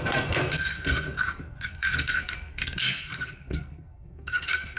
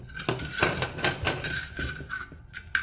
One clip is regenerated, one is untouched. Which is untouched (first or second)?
second